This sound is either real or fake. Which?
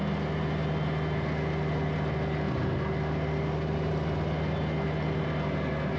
real